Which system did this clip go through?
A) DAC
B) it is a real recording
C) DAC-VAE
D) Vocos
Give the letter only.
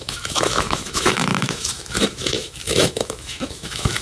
C